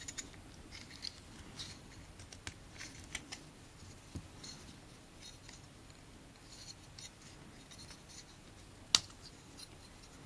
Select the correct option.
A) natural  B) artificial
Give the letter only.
A